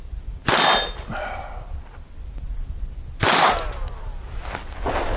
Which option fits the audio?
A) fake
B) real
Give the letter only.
B